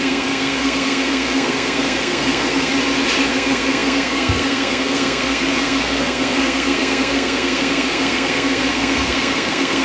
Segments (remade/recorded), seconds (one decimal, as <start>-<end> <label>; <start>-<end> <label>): 0.0-2.7 remade; 2.7-3.3 recorded; 3.3-9.8 remade